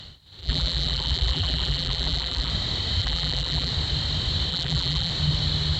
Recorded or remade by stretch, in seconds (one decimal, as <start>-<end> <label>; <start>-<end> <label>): 0.0-0.4 recorded; 0.4-2.5 remade; 2.5-3.0 recorded; 3.0-3.7 remade; 3.7-4.5 recorded; 4.5-5.1 remade; 5.1-5.8 recorded